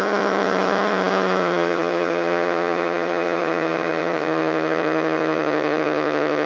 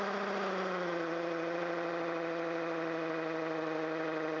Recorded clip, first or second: second